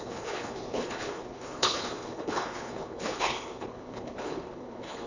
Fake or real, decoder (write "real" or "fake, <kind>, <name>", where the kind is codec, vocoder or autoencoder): fake, codec, HILCodec